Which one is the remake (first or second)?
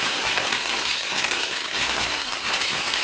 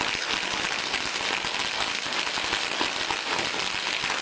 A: first